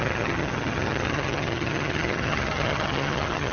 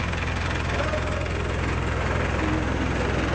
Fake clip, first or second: first